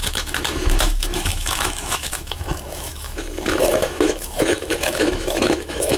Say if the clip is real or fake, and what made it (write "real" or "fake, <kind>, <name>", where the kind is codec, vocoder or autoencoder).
fake, autoencoder, DAC-VAE